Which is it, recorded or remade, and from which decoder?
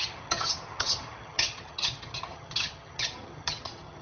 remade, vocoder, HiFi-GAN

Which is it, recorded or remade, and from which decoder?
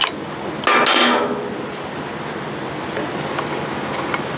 recorded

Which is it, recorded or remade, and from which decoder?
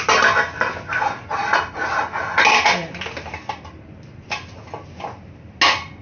recorded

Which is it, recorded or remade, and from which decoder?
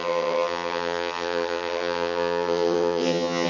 remade, vocoder, HiFi-GAN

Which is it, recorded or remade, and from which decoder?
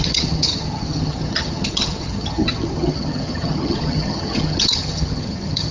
remade, vocoder, HiFi-GAN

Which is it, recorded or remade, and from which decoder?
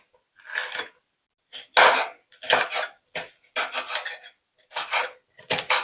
recorded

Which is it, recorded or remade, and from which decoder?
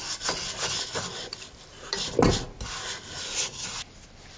recorded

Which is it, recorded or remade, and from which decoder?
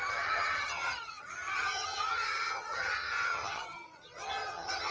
remade, vocoder, HiFi-GAN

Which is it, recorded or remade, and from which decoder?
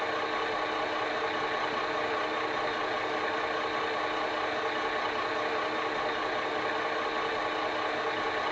recorded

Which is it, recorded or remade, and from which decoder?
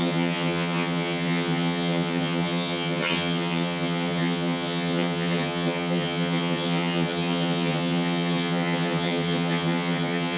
remade, vocoder, HiFi-GAN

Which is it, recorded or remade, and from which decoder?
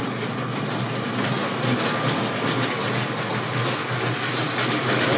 recorded